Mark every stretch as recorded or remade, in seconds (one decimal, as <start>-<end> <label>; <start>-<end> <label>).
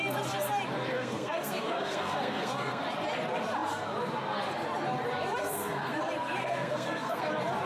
0.0-0.9 recorded; 0.9-2.8 remade; 2.8-5.4 recorded; 5.4-6.0 remade; 6.0-6.4 recorded; 6.4-7.3 remade; 7.3-7.7 recorded